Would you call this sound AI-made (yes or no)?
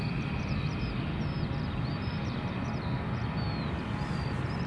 no